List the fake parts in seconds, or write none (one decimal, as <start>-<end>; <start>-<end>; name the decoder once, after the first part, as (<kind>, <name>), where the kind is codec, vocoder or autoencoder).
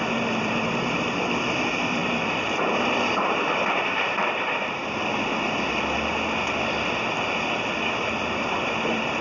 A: 0.0-4.8 (vocoder, BigVGAN v2); 8.0-9.2